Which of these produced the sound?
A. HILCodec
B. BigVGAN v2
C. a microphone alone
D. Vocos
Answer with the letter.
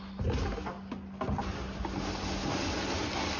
C